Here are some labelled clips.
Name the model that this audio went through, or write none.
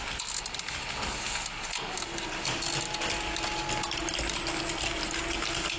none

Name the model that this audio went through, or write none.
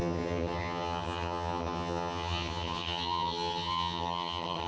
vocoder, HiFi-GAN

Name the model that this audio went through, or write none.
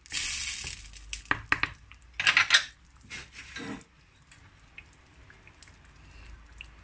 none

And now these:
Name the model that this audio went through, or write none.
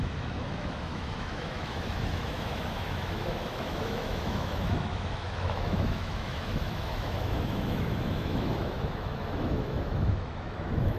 autoencoder, DAC-VAE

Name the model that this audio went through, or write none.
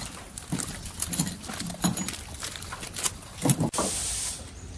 none